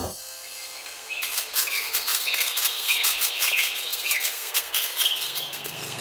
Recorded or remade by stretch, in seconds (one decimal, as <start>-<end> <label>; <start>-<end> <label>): 0.0-6.0 remade